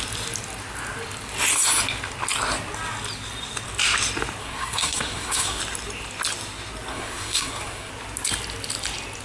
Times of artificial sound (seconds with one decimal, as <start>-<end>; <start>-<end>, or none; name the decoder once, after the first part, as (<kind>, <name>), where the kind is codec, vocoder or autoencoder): 4.4-5.6 (codec, SNAC); 6.9-7.9